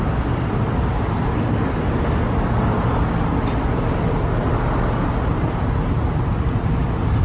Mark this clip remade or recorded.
recorded